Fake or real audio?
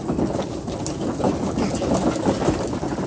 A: real